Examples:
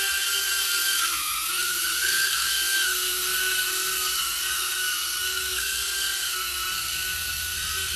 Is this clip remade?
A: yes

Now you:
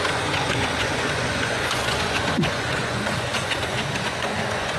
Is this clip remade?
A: yes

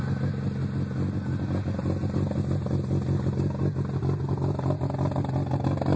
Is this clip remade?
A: no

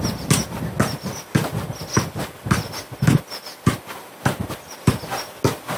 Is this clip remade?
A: no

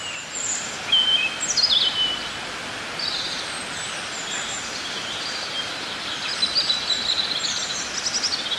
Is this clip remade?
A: no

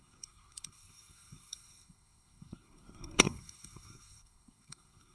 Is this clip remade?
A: yes